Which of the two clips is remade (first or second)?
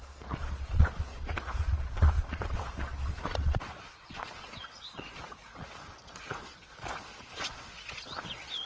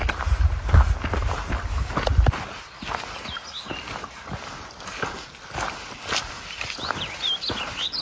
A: first